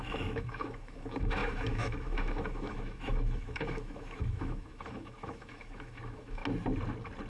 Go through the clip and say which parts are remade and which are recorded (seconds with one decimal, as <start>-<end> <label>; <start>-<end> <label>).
0.0-6.4 remade; 6.4-7.3 recorded